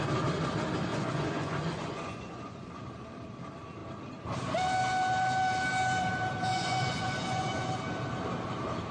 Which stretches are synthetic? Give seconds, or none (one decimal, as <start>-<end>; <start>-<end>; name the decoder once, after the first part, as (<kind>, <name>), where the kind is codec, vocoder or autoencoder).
0.9-2.8 (vocoder, Vocos); 6.5-7.7